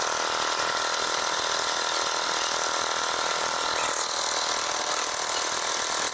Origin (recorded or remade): recorded